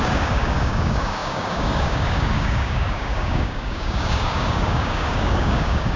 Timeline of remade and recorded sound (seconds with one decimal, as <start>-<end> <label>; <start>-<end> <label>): 0.0-6.0 remade